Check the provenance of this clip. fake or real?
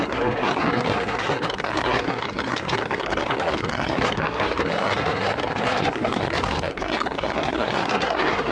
fake